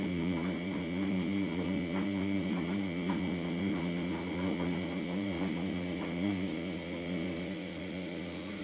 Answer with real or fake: fake